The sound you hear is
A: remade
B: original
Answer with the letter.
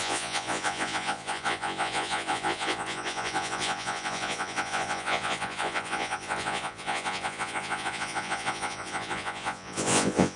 A